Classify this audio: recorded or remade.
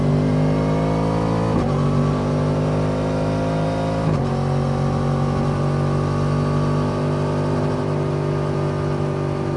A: recorded